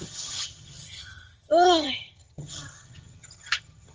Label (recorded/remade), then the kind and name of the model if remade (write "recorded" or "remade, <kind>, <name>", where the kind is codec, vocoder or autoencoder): remade, vocoder, HiFi-GAN